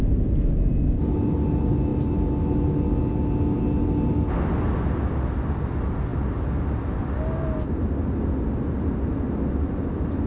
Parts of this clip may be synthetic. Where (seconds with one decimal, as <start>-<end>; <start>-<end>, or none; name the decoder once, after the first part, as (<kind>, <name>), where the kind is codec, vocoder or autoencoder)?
none